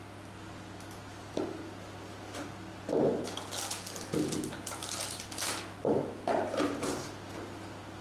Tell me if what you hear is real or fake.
real